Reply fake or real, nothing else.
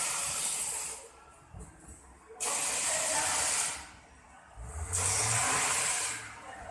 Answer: real